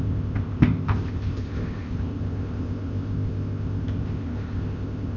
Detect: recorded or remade remade